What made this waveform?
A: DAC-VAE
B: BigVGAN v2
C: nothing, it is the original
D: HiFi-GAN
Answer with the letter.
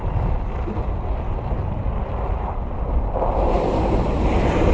C